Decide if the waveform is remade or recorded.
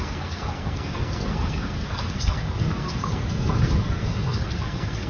remade